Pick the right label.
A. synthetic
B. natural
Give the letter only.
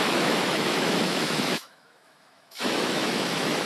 A